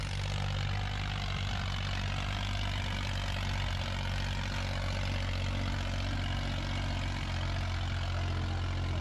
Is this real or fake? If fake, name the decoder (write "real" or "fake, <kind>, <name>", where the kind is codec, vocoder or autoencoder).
real